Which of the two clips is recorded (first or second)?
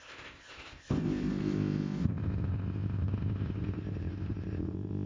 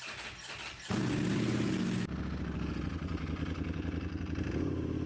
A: second